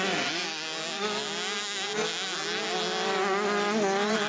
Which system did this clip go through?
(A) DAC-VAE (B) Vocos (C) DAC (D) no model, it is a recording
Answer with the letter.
D